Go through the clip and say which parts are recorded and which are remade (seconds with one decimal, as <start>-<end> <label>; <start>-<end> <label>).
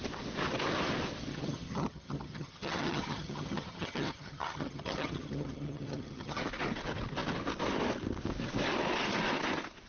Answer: 0.0-1.3 recorded; 1.3-6.4 remade; 6.4-9.9 recorded